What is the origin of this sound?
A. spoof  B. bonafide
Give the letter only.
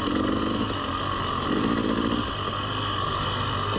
B